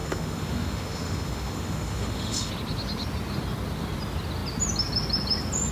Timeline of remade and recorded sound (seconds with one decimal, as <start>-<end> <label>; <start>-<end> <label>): 0.0-2.5 remade; 2.5-5.7 recorded